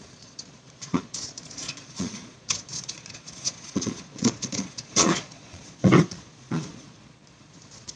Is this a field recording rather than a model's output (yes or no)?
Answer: no